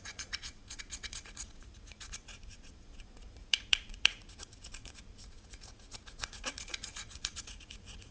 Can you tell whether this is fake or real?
fake